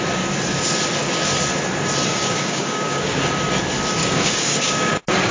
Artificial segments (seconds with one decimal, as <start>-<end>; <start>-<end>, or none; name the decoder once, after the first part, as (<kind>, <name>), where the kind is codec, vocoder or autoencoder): 2.1-3.3 (codec, DAC); 4.0-5.3